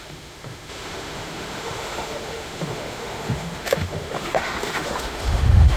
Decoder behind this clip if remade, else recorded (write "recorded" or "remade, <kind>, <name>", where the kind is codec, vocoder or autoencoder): remade, autoencoder, DAC-VAE